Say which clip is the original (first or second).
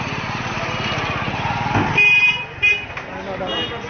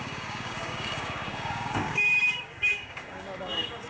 first